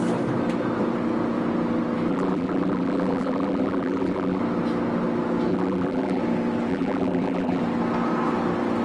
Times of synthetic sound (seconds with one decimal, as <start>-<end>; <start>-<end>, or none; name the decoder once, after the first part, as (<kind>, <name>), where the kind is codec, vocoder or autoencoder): 2.1-4.4 (vocoder, BigVGAN v2); 5.5-6.2; 6.7-7.6